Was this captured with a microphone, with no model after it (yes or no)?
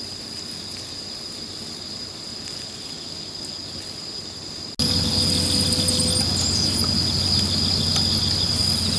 yes